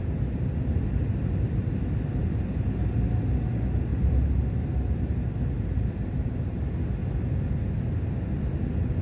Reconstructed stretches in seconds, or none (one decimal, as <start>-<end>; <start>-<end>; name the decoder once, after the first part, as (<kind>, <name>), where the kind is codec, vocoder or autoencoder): 2.2-2.8 (vocoder, BigVGAN v2); 3.9-6.6